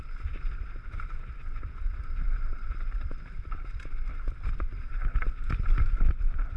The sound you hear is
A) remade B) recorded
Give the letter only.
B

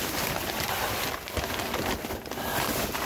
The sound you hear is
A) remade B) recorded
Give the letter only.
B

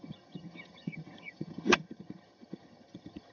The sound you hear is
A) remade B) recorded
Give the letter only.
A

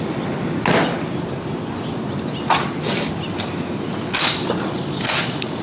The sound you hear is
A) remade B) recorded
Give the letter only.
B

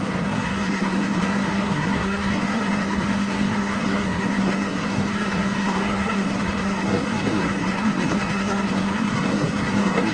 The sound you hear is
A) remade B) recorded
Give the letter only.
A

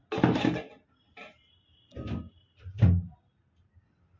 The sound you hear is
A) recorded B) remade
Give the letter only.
A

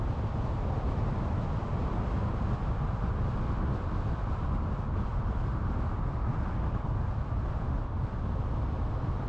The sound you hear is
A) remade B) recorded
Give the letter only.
B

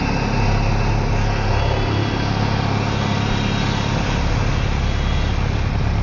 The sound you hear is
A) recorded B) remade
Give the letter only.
A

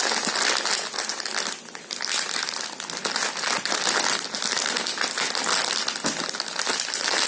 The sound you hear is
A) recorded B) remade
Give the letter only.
A